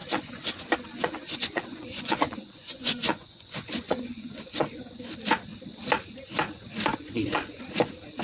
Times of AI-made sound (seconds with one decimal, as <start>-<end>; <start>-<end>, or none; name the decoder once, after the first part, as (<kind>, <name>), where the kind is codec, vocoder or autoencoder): 0.0-0.6 (vocoder, Vocos); 1.0-4.9; 6.9-7.6